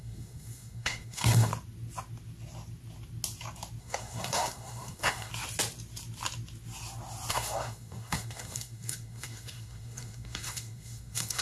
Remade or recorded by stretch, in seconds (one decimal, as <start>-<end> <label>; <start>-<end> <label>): 0.0-1.5 remade; 1.5-3.8 recorded; 3.8-5.3 remade; 5.3-7.3 recorded; 7.3-11.4 remade